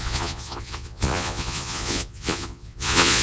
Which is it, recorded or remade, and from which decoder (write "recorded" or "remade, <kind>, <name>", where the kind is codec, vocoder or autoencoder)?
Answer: remade, vocoder, Vocos